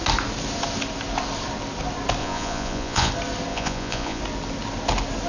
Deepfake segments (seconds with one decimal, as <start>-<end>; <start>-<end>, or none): 2.2-3.1; 3.5-4.2